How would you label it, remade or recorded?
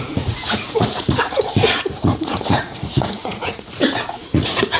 remade